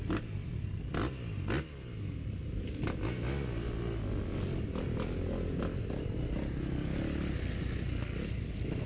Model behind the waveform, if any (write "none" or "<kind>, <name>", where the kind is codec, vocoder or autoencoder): none